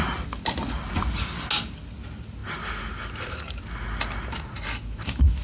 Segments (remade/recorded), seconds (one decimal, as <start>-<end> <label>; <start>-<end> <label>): 0.0-5.4 recorded

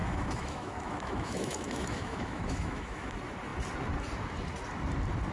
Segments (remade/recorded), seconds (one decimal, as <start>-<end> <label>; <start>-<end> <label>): 0.0-3.1 remade; 3.1-5.3 recorded

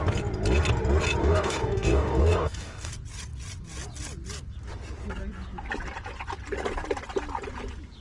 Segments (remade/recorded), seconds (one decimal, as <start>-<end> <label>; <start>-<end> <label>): 0.0-1.2 recorded; 1.2-2.9 remade; 2.9-8.0 recorded

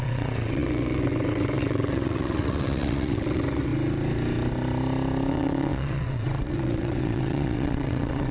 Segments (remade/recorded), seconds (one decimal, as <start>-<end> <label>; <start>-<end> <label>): 0.0-3.7 remade; 3.7-5.3 recorded; 5.3-8.3 remade

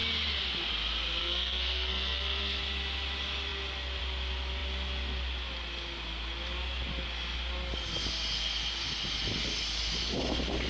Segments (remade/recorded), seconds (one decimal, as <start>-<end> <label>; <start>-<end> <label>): 0.0-1.2 recorded; 1.2-2.6 remade; 2.6-10.7 recorded

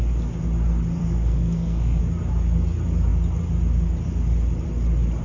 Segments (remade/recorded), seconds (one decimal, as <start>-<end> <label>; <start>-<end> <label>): 0.0-1.0 recorded; 1.0-2.0 remade; 2.0-5.2 recorded

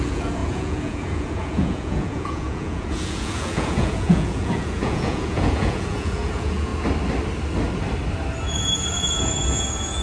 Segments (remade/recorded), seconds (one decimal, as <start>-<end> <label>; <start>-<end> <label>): 0.0-6.7 remade; 6.7-8.4 recorded; 8.4-10.0 remade